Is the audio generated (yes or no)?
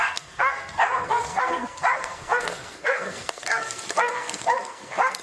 yes